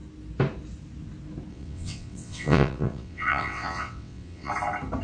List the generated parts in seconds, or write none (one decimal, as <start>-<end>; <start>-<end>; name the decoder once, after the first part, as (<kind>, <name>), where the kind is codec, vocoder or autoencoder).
1.5-4.5 (vocoder, WaveNeXt)